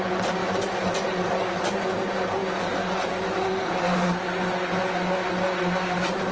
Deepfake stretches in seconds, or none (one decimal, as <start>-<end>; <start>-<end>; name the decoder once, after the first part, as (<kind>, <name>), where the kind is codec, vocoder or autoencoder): 2.4-4.2 (vocoder, BigVGAN v2)